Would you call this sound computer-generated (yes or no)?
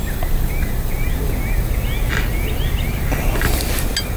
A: no